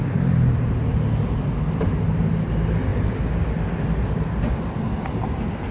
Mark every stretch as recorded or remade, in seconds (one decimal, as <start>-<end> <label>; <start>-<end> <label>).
0.0-5.7 recorded